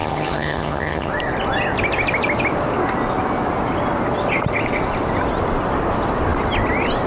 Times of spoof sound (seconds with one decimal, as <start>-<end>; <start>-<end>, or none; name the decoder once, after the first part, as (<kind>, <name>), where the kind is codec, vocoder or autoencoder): 0.0-1.1 (vocoder, HiFi-GAN)